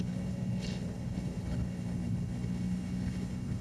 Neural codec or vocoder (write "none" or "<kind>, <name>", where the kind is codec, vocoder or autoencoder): codec, HILCodec